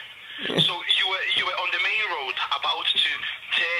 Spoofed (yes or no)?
yes